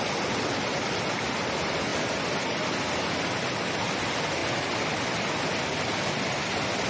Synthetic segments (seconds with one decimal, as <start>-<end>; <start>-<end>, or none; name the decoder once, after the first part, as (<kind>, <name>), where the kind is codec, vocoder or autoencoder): none